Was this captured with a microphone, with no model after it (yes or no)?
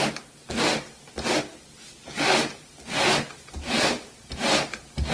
yes